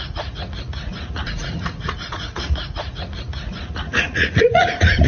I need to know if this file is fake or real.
fake